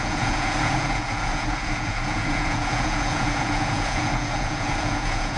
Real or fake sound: fake